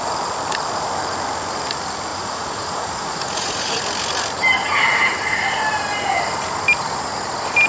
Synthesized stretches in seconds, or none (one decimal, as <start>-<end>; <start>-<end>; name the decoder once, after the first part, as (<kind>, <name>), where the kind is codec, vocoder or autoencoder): 2.1-3.8 (vocoder, Vocos)